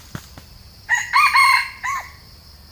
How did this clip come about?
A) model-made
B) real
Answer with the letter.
A